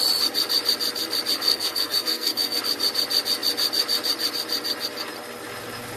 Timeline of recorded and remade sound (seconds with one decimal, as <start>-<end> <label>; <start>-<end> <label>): 0.0-1.5 recorded; 1.5-2.6 remade; 2.6-6.0 recorded